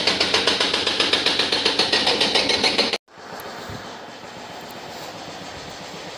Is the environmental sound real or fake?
real